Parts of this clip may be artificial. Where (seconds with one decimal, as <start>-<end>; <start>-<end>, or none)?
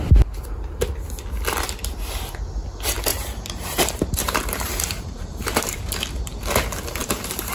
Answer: 3.1-6.0; 7.0-7.5